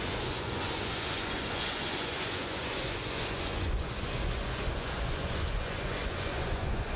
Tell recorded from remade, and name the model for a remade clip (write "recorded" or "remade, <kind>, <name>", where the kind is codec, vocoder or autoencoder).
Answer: remade, vocoder, Vocos